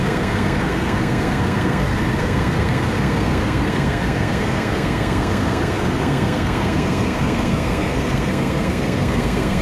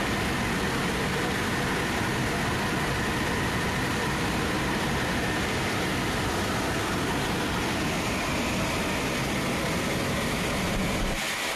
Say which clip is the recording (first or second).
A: second